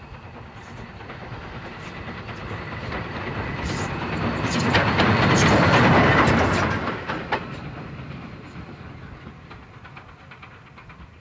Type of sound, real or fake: real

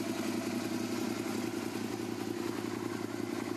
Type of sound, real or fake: real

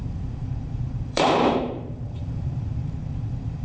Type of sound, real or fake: fake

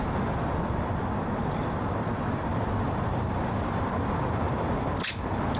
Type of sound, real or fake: fake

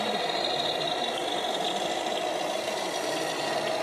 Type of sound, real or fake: fake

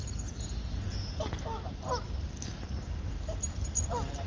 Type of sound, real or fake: real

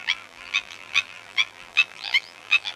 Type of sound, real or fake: fake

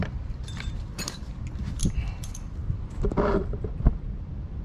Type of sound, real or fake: fake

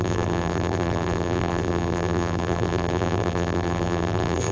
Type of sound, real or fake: fake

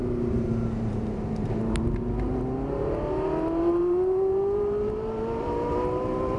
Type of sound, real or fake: fake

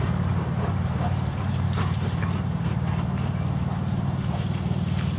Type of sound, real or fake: fake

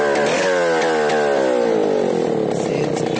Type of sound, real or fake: real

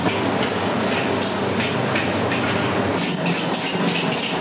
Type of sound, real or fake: real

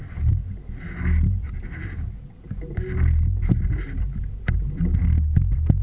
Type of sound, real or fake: real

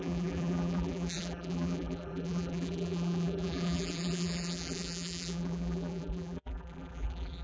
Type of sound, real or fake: fake